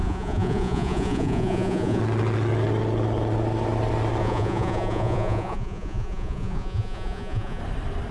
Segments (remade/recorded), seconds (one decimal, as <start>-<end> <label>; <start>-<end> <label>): 0.0-2.0 remade; 2.0-4.2 recorded; 4.2-7.6 remade; 7.6-8.1 recorded